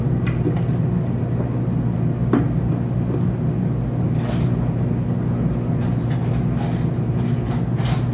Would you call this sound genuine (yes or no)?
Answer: yes